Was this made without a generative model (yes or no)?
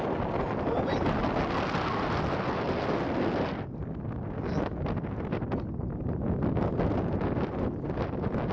yes